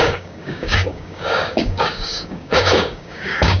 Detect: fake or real fake